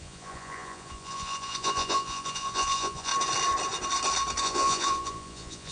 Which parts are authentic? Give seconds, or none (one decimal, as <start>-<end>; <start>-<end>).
3.1-4.4